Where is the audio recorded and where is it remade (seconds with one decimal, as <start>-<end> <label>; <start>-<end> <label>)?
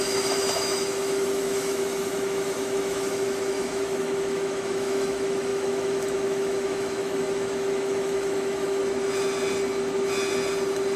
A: 0.0-8.8 remade; 8.8-11.0 recorded